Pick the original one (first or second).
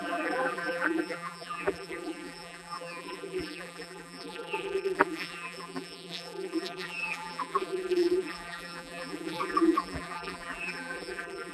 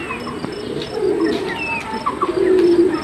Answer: second